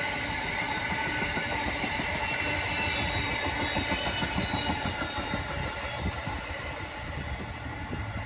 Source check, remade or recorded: recorded